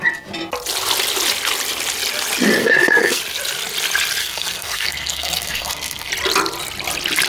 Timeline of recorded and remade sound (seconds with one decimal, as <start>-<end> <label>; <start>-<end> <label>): 0.0-2.6 recorded; 2.6-3.2 remade; 3.2-4.2 recorded; 4.2-6.1 remade; 6.1-7.3 recorded